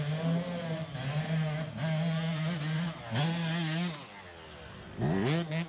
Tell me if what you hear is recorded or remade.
recorded